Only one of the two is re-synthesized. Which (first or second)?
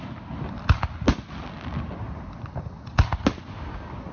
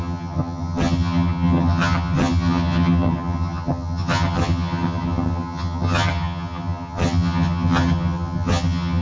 second